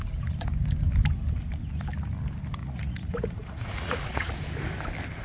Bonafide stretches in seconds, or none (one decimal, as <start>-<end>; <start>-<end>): 0.0-2.6; 4.3-5.2